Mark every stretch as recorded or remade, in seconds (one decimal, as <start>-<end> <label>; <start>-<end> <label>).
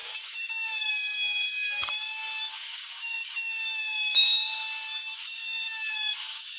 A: 0.0-6.6 remade